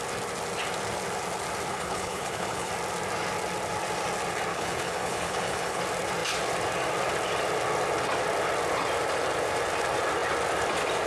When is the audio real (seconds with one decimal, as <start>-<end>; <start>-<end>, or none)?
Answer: 0.0-1.7; 2.7-4.5; 5.8-11.1